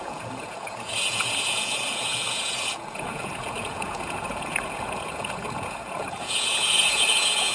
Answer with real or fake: fake